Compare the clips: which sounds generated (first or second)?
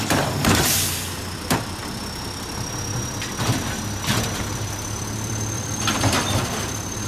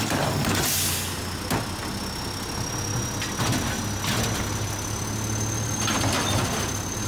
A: first